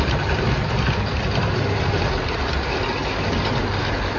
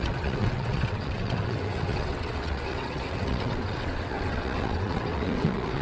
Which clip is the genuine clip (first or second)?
first